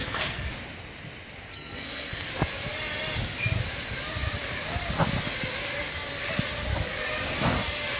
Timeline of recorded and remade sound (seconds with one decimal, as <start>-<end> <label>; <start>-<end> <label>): 0.0-0.5 remade; 0.5-1.5 recorded; 1.5-2.3 remade; 2.3-8.0 recorded